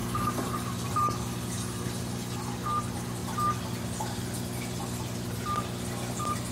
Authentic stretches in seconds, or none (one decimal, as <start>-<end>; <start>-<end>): 2.0-6.5